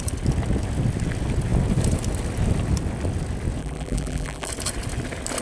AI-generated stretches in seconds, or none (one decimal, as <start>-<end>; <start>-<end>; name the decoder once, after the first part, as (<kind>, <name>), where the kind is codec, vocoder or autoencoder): 3.6-4.5 (vocoder, BigVGAN v2)